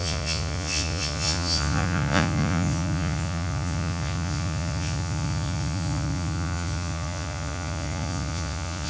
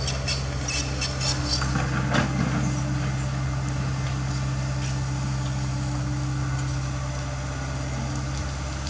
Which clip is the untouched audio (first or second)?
second